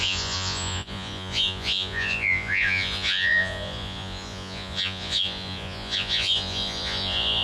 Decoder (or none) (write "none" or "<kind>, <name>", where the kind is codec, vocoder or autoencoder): vocoder, Vocos